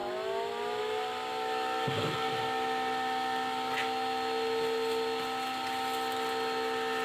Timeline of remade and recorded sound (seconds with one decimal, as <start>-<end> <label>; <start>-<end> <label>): 0.0-7.0 recorded